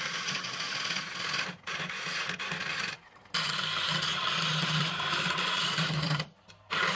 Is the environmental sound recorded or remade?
recorded